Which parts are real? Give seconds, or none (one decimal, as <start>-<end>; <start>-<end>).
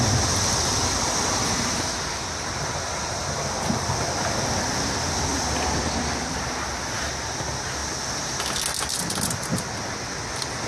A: 0.0-0.8; 4.8-5.3; 7.1-10.7